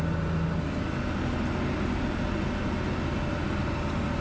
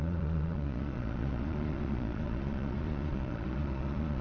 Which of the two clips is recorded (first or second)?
first